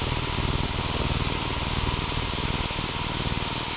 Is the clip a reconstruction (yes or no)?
no